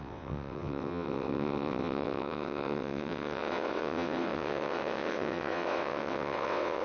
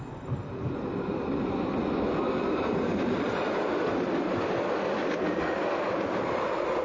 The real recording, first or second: second